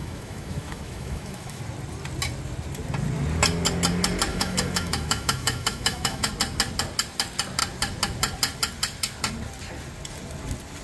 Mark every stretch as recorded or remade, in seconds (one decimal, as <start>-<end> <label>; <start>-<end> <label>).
0.0-1.6 remade; 1.6-4.3 recorded; 4.3-6.3 remade; 6.3-10.8 recorded